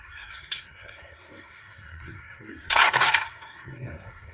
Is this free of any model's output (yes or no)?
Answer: no